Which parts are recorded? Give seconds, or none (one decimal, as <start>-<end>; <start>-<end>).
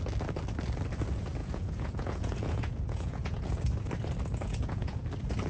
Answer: 0.0-1.4; 3.6-4.3; 5.0-5.5